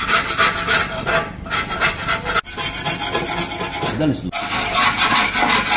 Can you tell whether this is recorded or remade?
recorded